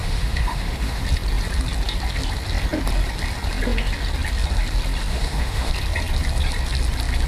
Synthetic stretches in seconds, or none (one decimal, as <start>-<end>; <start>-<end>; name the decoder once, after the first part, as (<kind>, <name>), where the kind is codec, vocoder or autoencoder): 0.0-1.0 (autoencoder, DAC-VAE); 5.1-5.7